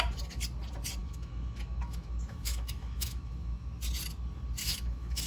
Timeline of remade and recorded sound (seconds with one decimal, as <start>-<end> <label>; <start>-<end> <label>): 0.0-1.0 recorded; 1.0-3.8 remade; 3.8-4.6 recorded; 4.6-5.3 remade